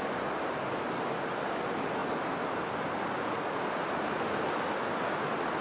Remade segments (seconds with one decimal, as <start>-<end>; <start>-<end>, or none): none